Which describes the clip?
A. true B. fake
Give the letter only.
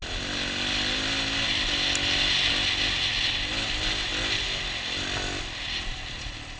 A